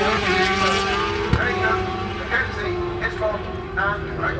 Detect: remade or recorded recorded